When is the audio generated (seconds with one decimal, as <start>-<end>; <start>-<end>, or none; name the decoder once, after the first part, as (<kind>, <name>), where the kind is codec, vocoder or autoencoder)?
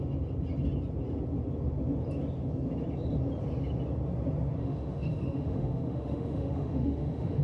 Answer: 4.6-7.4 (autoencoder, DAC-VAE)